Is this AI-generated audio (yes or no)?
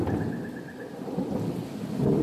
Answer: no